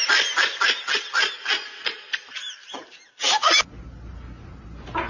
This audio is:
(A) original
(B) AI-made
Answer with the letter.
A